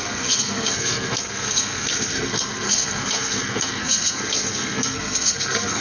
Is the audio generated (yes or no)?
yes